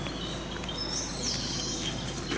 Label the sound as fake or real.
real